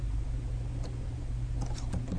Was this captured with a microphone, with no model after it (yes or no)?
yes